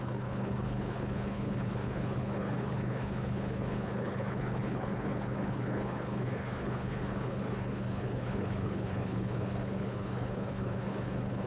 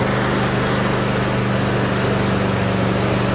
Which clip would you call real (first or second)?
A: second